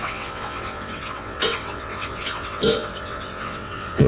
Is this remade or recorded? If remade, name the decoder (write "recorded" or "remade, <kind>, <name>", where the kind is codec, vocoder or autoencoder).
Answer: remade, vocoder, WaveNeXt